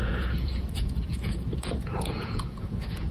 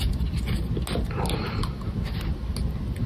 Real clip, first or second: second